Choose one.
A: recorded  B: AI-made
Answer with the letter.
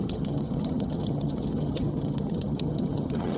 B